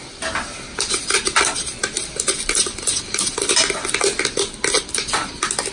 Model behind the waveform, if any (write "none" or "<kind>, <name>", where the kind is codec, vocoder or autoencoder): none